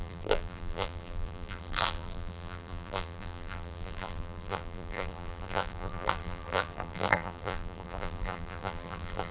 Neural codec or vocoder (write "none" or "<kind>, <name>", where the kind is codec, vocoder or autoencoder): vocoder, BigVGAN v2